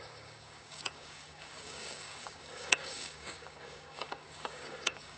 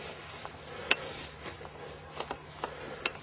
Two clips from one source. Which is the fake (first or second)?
first